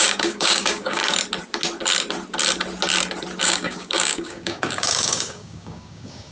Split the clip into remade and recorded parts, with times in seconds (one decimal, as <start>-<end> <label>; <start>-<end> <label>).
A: 0.0-1.0 remade; 1.0-3.4 recorded; 3.4-6.3 remade